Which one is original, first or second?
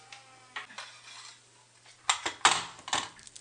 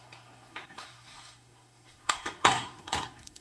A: first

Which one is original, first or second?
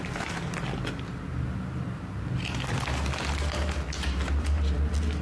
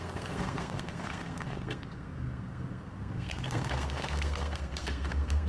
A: first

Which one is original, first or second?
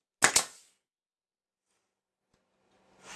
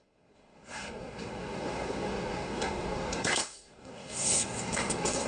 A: first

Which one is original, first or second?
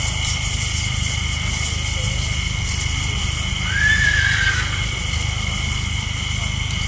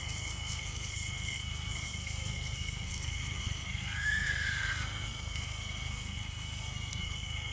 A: first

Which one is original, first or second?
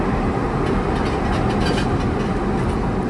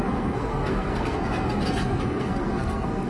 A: first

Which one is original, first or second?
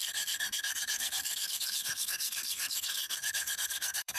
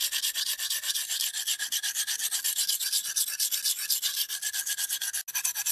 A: second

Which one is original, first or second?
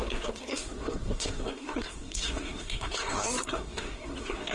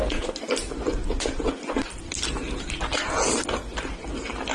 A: second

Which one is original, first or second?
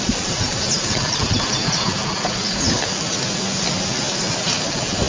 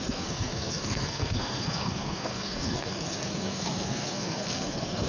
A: first